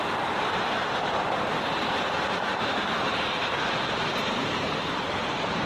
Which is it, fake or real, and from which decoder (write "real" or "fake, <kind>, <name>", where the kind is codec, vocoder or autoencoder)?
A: fake, vocoder, BigVGAN v2